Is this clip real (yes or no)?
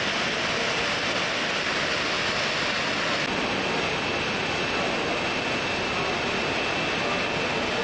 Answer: yes